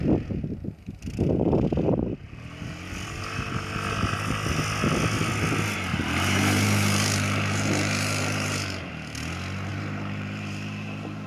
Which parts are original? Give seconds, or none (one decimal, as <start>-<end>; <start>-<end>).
0.0-5.9; 8.9-9.7